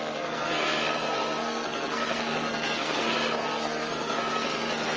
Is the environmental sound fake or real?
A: fake